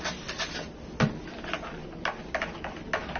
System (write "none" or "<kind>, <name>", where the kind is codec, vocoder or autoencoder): none